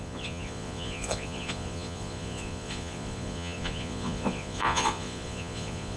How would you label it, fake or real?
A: fake